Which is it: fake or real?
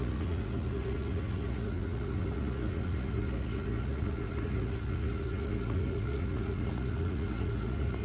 fake